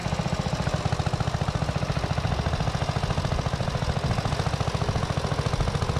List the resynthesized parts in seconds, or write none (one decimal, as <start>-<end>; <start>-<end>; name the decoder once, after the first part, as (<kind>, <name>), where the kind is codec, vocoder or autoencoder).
none